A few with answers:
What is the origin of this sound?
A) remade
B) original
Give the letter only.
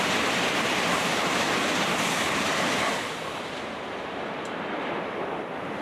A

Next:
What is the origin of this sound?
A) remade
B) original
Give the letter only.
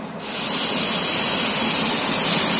B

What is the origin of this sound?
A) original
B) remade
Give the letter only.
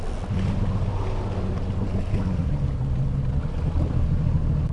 A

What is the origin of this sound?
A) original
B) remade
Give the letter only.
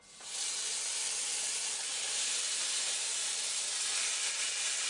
A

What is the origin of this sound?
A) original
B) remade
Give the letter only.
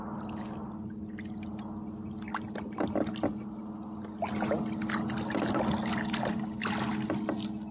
A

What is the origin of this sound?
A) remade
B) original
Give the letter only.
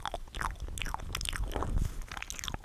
B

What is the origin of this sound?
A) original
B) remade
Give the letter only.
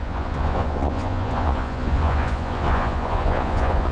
B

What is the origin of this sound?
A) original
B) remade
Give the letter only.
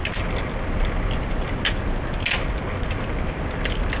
A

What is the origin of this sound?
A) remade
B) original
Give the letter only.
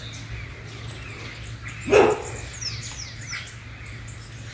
B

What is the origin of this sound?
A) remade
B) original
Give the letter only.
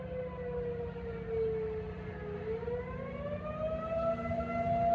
B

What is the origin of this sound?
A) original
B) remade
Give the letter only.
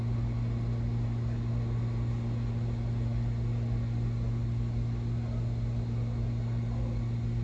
A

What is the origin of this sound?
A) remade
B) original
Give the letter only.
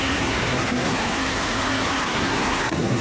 A